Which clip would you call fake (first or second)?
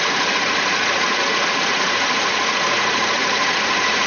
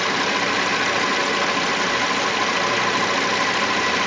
first